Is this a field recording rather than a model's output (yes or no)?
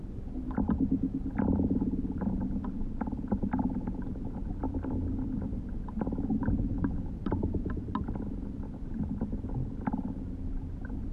yes